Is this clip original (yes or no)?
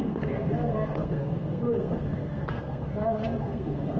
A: no